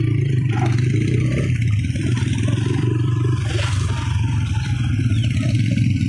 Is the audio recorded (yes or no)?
no